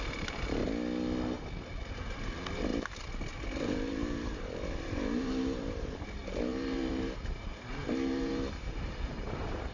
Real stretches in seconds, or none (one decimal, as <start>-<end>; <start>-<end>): 0.6-1.9